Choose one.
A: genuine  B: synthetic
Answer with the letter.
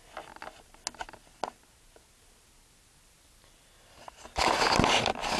A